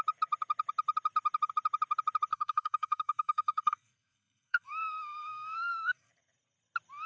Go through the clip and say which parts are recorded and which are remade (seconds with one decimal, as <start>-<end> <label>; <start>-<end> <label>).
0.0-2.3 recorded; 2.3-6.1 remade; 6.1-7.1 recorded